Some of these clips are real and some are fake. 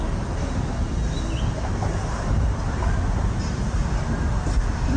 real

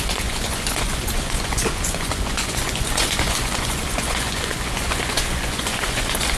fake